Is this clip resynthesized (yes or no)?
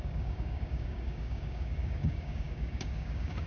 yes